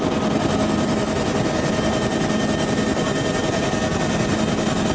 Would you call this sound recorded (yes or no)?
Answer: yes